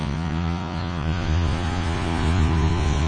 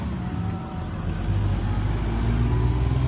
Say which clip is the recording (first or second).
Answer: second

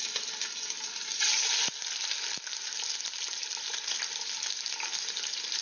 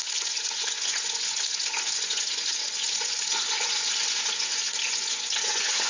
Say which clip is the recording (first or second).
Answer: first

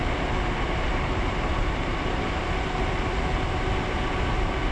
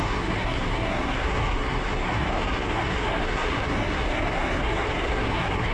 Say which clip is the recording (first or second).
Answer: first